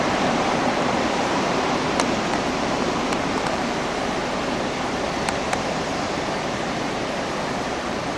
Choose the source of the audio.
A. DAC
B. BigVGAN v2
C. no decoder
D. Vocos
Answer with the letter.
B